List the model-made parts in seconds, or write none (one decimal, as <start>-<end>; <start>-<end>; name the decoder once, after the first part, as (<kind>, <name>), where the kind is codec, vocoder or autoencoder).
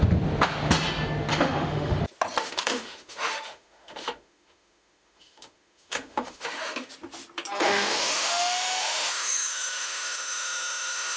1.3-2.0 (autoencoder, DAC-VAE); 2.4-6.9; 7.6-11.2